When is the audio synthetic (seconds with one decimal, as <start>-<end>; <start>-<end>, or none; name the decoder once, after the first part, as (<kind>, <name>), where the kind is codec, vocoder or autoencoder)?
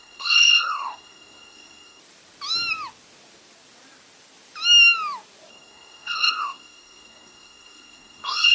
0.0-2.0 (codec, SNAC); 5.5-8.5